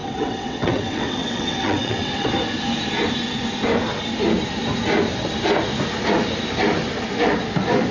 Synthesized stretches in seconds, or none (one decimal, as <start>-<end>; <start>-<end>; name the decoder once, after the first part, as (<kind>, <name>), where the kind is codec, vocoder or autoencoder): 0.0-2.3 (vocoder, WaveNeXt)